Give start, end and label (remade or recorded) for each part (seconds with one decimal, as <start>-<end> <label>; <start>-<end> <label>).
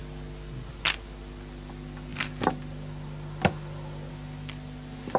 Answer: 0.0-5.2 recorded